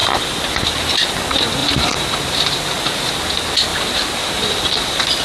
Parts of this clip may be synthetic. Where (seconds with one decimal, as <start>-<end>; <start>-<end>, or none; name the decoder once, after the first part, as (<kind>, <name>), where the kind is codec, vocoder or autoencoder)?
1.6-3.0 (vocoder, BigVGAN v2); 3.7-5.2